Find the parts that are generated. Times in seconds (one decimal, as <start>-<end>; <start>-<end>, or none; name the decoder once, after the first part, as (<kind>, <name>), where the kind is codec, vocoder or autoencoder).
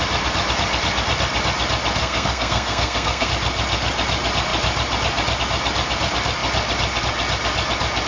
2.0-3.3 (codec, SNAC)